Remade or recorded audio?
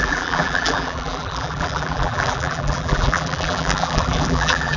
remade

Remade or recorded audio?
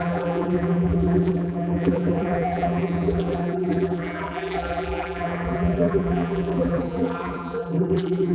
remade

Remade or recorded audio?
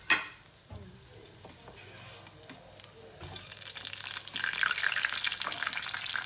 recorded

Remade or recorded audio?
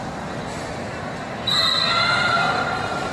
remade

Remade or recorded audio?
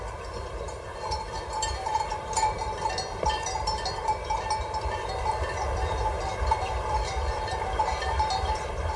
remade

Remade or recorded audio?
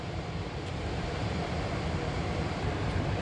remade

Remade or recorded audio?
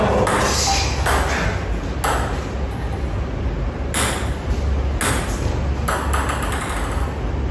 recorded